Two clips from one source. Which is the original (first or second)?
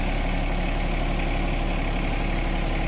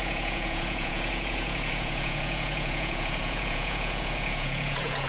first